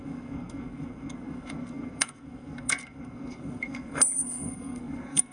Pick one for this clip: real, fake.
fake